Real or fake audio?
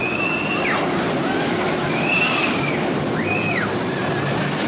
real